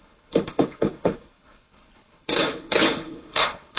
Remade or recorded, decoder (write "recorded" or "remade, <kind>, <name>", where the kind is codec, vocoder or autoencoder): remade, codec, HILCodec